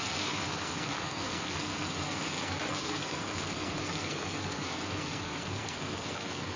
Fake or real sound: fake